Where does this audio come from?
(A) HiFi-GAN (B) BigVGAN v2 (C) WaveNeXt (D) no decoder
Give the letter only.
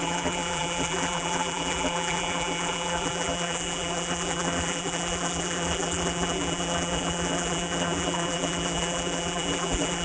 B